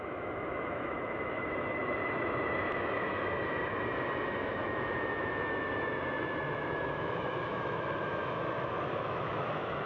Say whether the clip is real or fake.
fake